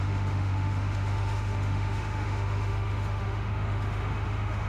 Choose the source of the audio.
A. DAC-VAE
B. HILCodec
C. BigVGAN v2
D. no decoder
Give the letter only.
A